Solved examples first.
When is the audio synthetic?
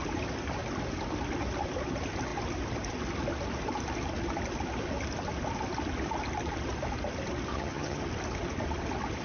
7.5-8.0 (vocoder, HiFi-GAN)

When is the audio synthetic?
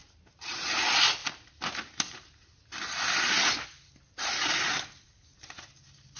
none